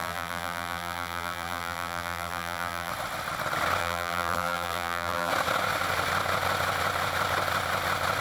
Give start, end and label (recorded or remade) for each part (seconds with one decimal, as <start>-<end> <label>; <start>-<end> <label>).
0.0-2.9 remade; 2.9-3.8 recorded; 3.8-5.3 remade; 5.3-8.2 recorded